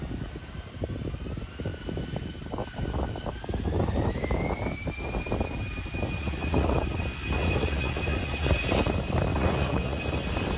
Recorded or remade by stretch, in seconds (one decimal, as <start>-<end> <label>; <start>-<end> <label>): 0.0-6.2 recorded; 6.2-7.0 remade; 7.0-7.4 recorded; 7.4-8.9 remade; 8.9-9.3 recorded; 9.3-10.0 remade; 10.0-10.6 recorded